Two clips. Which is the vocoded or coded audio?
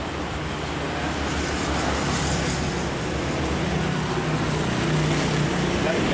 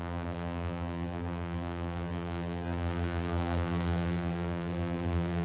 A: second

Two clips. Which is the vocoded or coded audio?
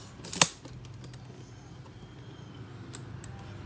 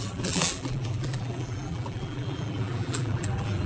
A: second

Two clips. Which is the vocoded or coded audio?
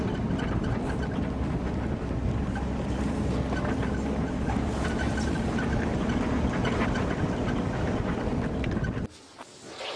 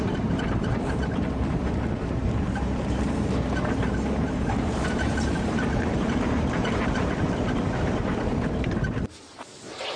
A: second